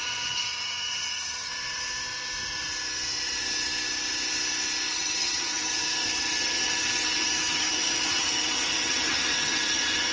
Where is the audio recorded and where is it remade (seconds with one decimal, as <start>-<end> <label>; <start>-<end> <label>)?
0.0-1.5 remade; 1.5-4.9 recorded; 4.9-10.1 remade